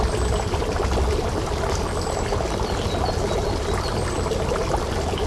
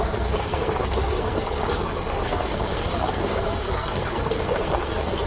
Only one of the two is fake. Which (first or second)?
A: second